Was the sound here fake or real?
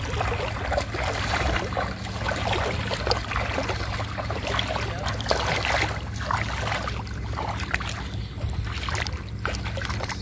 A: real